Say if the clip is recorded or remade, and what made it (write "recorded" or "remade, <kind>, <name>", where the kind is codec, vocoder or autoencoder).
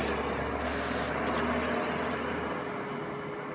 recorded